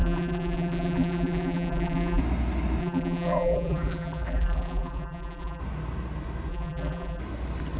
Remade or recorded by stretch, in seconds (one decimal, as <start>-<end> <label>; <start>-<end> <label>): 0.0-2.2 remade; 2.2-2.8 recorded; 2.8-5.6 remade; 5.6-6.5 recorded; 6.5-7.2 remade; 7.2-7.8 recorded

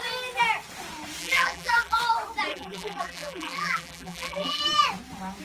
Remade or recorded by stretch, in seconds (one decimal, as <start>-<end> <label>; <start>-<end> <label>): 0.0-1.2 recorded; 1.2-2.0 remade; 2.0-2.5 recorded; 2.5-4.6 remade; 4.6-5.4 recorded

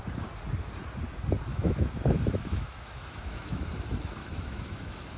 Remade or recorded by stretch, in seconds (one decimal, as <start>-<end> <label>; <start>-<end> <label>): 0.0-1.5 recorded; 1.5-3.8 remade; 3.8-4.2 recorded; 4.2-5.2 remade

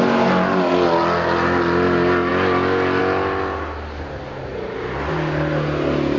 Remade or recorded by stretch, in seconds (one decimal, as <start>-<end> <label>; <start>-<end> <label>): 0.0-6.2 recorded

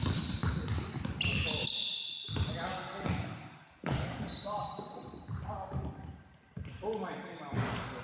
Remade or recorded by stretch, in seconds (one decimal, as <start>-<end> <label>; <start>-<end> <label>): 0.0-0.4 remade; 0.4-3.1 recorded; 3.1-8.0 remade

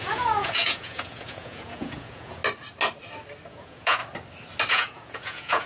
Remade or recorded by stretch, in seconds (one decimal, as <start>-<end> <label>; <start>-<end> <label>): 0.0-2.4 remade; 2.4-3.5 recorded; 3.5-4.0 remade; 4.0-4.7 recorded; 4.7-5.7 remade